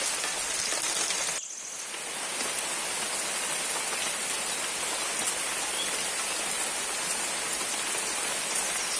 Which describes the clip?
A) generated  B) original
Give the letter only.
B